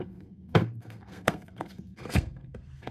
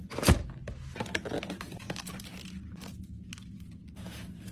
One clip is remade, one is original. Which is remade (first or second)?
first